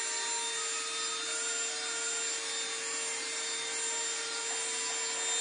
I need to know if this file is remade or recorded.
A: recorded